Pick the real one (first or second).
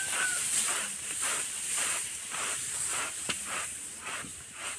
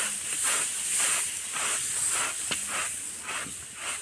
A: second